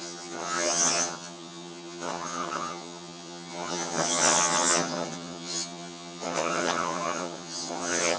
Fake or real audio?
fake